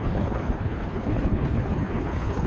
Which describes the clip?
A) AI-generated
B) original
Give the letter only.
A